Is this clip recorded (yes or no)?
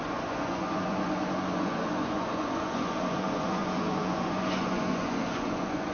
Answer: no